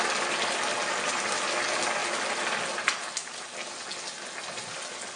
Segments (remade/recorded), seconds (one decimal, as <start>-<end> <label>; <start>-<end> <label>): 0.0-5.2 recorded